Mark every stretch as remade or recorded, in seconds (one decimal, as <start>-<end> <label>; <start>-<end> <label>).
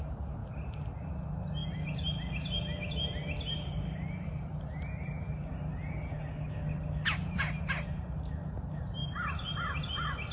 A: 0.0-0.4 recorded; 0.4-1.1 remade; 1.1-9.0 recorded; 9.0-9.8 remade; 9.8-10.3 recorded